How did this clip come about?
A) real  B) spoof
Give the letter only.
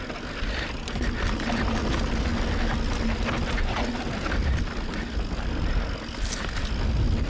A